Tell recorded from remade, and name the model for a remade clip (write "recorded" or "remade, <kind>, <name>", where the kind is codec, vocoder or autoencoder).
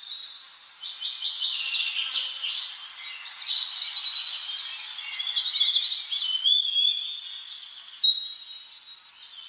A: recorded